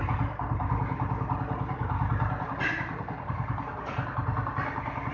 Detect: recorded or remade recorded